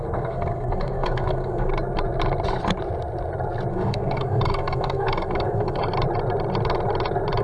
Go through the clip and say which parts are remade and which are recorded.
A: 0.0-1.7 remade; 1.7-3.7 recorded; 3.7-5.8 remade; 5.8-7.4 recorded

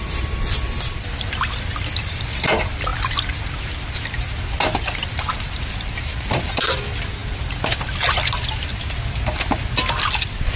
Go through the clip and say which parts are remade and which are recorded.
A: 0.0-6.1 recorded; 6.1-6.8 remade; 6.8-10.6 recorded

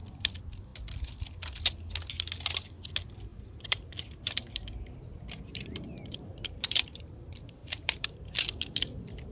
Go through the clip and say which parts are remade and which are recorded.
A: 0.0-3.3 recorded; 3.3-7.0 remade; 7.0-7.6 recorded; 7.6-8.3 remade; 8.3-9.3 recorded

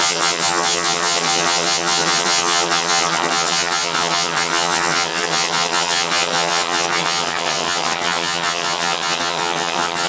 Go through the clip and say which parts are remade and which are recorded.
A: 0.0-10.1 remade

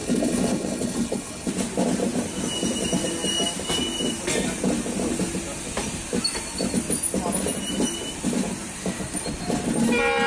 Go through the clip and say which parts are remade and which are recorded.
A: 0.0-1.5 remade; 1.5-10.3 recorded